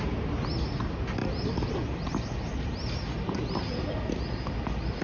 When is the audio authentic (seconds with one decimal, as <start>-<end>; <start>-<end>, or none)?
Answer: 0.0-5.0